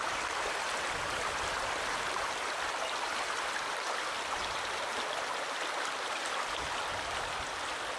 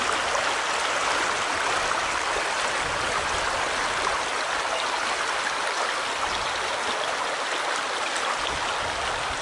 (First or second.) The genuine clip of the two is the second